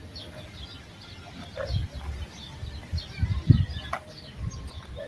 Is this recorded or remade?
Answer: recorded